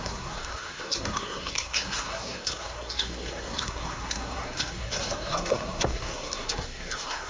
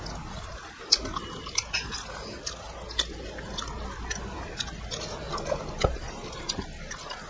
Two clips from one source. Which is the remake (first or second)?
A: first